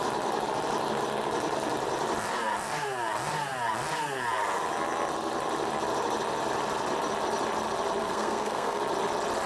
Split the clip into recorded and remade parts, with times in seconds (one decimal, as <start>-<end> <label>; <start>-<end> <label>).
0.0-8.0 recorded; 8.0-8.8 remade; 8.8-9.5 recorded